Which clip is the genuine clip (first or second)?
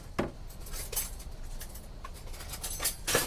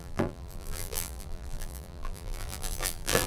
first